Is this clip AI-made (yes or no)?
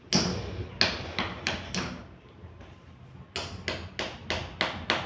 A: no